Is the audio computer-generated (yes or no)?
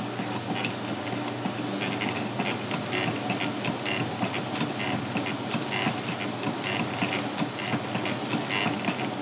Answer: no